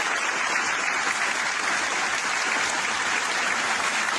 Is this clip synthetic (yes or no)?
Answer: no